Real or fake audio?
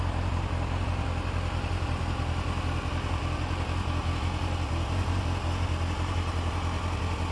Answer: real